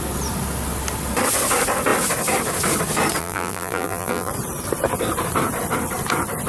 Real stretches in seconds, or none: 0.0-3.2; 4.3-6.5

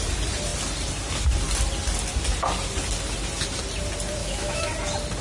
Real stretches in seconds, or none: 0.0-4.2; 4.7-5.2

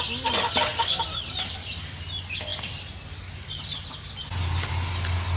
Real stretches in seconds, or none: 0.0-5.4

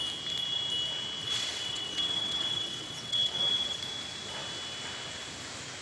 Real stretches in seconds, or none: 0.0-1.2; 3.8-5.8

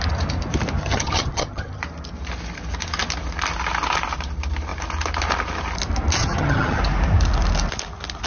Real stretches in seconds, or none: 0.0-0.8; 1.8-6.2; 6.8-8.3

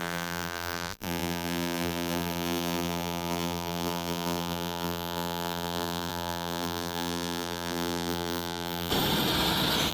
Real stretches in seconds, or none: 8.9-9.9

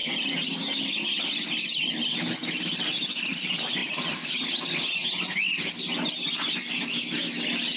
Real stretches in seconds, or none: 0.6-3.8; 4.5-7.8

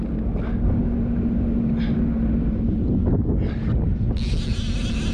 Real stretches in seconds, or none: 0.0-5.1